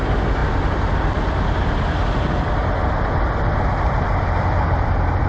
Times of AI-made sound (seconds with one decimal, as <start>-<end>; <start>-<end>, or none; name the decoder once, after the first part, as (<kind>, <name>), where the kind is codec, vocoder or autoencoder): none